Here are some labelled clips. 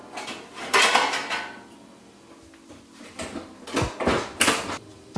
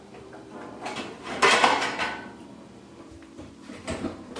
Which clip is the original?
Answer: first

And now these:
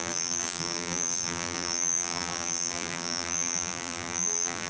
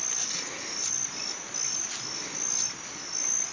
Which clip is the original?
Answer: second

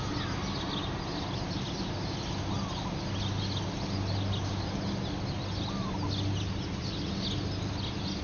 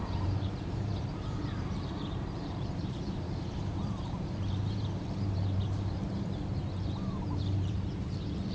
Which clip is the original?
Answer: first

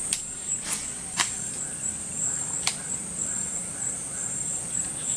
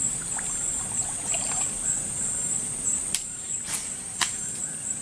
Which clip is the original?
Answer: first